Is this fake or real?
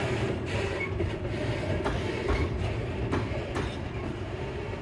fake